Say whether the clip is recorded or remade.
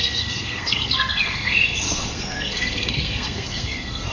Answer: remade